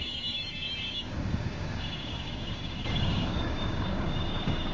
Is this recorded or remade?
remade